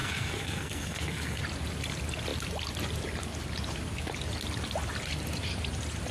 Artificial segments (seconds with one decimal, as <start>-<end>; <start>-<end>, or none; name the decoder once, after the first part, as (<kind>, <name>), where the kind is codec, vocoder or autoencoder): 0.0-1.4 (codec, SNAC)